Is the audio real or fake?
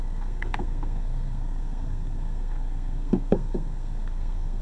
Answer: fake